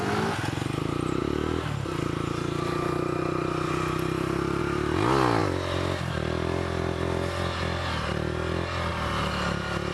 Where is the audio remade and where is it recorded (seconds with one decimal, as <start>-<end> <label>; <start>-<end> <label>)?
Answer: 0.0-9.9 recorded